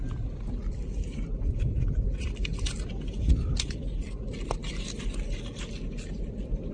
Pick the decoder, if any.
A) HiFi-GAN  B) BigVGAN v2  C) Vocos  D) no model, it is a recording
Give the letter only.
D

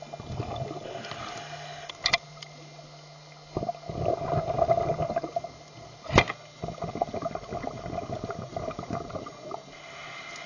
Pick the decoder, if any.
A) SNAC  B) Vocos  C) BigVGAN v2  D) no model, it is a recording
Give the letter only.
D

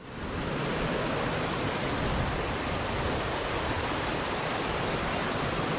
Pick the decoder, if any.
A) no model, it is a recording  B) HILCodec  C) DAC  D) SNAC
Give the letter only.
A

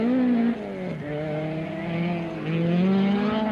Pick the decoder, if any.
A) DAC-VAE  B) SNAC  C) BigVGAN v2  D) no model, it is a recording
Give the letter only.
D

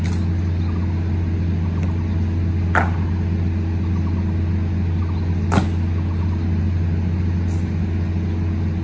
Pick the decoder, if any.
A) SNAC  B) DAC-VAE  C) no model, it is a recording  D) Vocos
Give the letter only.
C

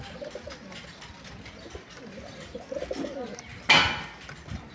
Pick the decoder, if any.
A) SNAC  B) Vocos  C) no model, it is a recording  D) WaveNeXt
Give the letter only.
C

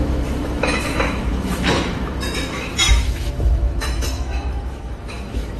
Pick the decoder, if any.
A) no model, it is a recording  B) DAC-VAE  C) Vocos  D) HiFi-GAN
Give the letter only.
B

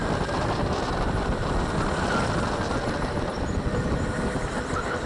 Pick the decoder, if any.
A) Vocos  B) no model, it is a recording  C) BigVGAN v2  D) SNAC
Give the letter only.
B